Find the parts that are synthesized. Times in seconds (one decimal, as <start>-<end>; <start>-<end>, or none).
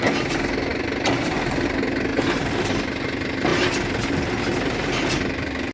0.7-1.7; 2.1-2.7; 3.5-4.3